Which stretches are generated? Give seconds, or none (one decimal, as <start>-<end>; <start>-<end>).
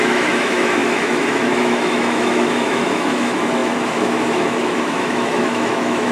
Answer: 0.0-6.1